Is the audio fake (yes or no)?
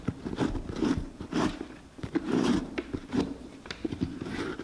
yes